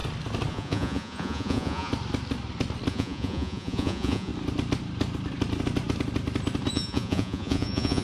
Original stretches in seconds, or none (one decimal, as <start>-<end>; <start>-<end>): 0.0-0.5; 1.9-2.9; 4.3-6.7